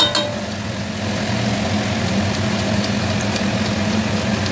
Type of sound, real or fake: real